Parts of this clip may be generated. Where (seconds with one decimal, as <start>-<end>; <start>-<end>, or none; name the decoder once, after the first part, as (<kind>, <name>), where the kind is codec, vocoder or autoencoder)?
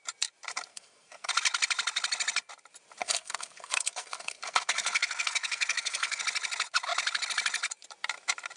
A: 0.7-1.3 (codec, SNAC); 3.0-6.2